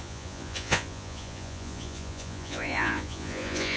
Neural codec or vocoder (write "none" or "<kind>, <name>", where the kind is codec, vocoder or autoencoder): vocoder, Vocos